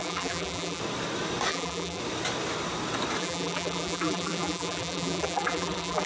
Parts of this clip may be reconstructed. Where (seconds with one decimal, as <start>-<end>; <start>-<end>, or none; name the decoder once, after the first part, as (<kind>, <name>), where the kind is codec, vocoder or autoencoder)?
0.0-0.8 (vocoder, BigVGAN v2); 1.5-2.0; 3.2-6.1